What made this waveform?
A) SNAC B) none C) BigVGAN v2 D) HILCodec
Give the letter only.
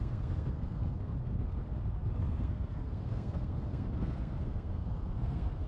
A